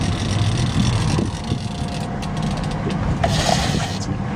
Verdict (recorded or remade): recorded